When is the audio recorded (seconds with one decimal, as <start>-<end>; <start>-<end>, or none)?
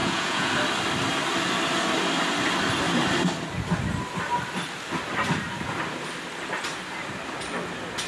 0.5-8.1